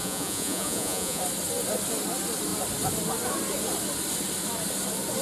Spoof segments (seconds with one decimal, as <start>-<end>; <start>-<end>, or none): 0.0-1.2